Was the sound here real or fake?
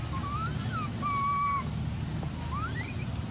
real